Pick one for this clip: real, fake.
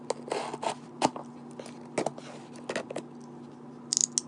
real